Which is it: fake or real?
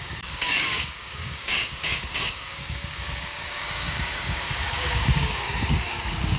fake